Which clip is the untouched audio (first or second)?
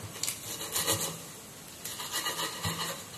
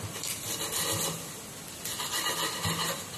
first